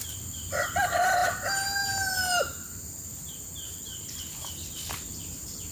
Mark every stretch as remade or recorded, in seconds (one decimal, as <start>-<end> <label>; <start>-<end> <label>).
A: 0.0-5.7 recorded